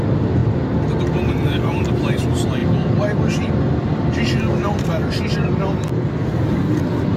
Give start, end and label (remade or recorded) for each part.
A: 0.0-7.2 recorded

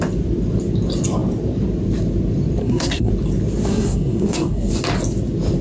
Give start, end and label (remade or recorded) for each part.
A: 0.0-2.6 recorded; 2.6-3.1 remade; 3.1-3.7 recorded; 3.7-4.7 remade; 4.7-5.6 recorded

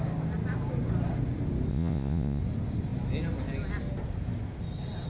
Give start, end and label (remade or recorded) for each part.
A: 0.0-1.7 recorded; 1.7-2.4 remade; 2.4-5.1 recorded

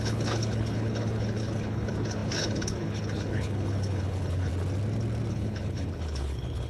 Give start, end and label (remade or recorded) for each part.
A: 0.0-4.5 remade; 4.5-5.3 recorded; 5.3-6.7 remade

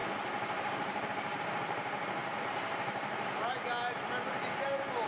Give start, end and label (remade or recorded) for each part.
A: 0.0-1.1 remade; 1.1-2.2 recorded; 2.2-3.5 remade; 3.5-5.1 recorded

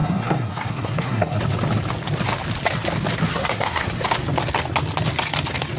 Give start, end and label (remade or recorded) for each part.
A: 0.0-1.4 remade; 1.4-3.3 recorded; 3.3-3.9 remade; 3.9-5.8 recorded